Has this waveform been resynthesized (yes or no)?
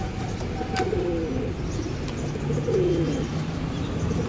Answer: no